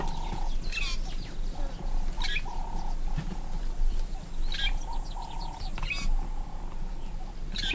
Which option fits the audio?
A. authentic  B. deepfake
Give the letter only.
A